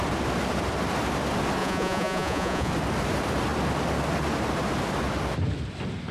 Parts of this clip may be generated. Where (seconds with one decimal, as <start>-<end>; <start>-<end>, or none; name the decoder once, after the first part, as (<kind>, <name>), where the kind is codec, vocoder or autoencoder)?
1.6-2.7 (vocoder, Vocos)